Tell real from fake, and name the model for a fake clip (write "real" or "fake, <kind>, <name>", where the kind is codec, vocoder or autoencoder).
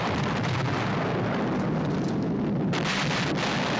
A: real